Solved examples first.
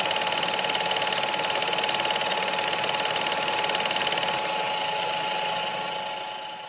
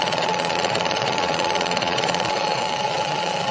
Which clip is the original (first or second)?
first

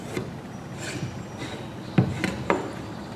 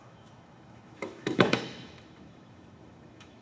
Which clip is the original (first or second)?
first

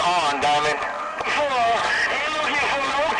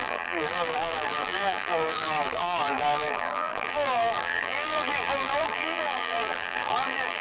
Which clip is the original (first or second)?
first